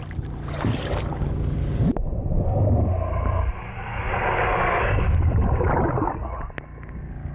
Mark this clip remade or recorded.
recorded